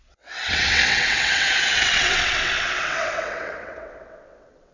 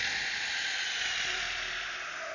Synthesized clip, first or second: first